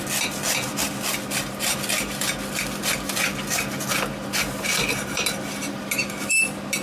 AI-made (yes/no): no